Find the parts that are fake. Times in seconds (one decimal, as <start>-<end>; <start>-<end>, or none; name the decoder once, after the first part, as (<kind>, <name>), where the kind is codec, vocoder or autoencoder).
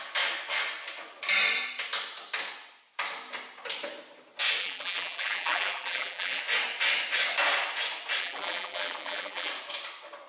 4.6-6.4 (vocoder, BigVGAN v2); 8.2-9.5